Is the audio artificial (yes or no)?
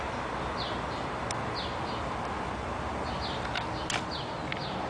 no